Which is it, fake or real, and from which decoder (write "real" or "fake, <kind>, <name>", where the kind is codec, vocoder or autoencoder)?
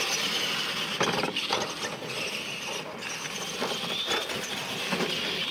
real